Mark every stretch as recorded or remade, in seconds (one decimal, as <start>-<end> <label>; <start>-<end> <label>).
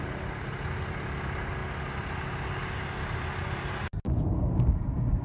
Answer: 0.0-5.2 recorded